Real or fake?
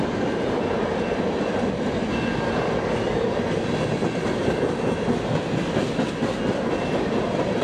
real